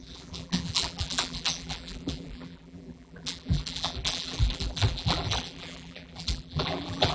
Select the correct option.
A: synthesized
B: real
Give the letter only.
A